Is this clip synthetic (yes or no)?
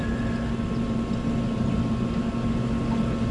no